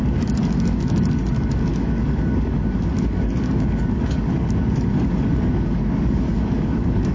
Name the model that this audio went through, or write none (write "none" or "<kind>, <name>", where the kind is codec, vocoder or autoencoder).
codec, DAC